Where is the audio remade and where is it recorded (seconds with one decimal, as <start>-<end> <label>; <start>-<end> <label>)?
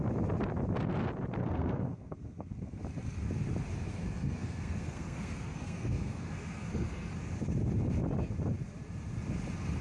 0.0-1.4 recorded; 1.4-2.8 remade; 2.8-3.9 recorded; 3.9-7.1 remade; 7.1-9.8 recorded